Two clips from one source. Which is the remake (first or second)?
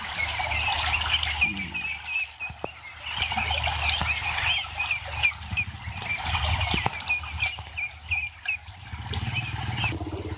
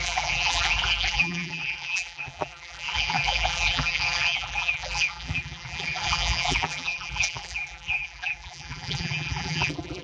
second